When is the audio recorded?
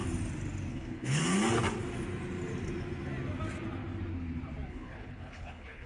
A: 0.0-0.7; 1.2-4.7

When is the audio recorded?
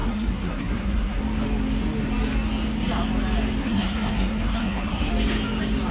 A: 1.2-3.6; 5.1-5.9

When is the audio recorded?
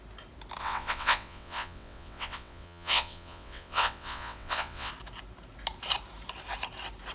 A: 0.0-0.6; 4.9-7.1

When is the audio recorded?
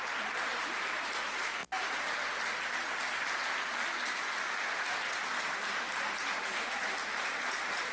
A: 1.6-5.4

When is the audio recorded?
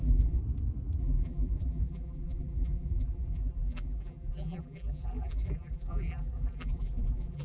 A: 0.4-1.0